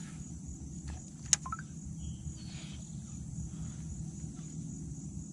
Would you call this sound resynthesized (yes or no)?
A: no